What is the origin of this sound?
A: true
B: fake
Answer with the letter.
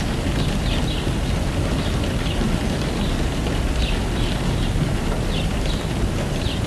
A